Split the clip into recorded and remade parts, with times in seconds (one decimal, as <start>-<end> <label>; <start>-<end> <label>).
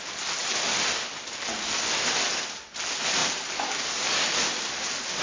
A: 0.0-5.2 recorded